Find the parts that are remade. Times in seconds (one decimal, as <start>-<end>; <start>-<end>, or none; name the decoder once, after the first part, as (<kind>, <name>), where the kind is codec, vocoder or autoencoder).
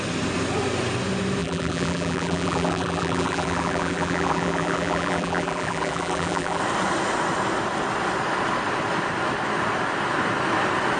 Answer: 1.4-6.6 (vocoder, BigVGAN v2)